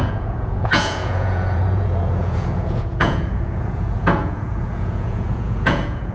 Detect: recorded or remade remade